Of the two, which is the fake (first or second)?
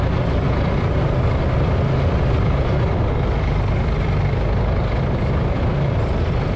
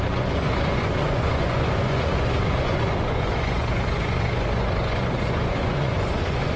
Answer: second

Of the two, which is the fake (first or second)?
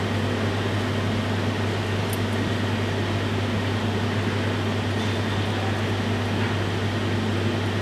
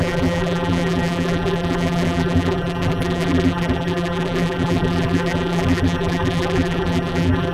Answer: second